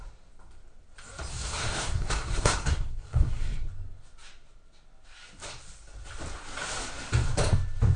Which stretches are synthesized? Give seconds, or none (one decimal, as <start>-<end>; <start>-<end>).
1.3-3.7